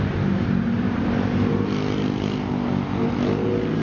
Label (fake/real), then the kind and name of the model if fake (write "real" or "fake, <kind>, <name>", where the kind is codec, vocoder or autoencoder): real